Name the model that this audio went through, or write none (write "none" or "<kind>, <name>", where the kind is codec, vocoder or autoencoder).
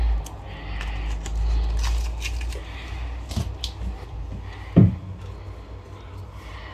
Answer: none